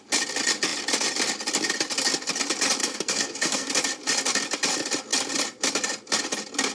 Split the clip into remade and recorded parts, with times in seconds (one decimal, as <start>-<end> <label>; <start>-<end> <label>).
0.0-2.8 recorded; 2.8-3.7 remade; 3.7-6.7 recorded